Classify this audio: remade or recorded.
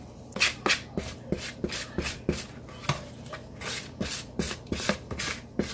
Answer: recorded